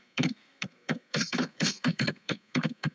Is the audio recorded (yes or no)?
no